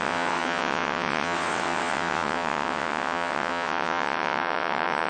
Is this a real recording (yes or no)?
no